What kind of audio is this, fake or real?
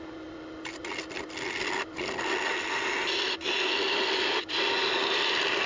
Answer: real